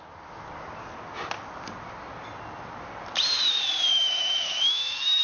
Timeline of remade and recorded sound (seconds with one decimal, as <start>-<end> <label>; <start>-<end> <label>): 0.0-3.9 recorded; 3.9-5.2 remade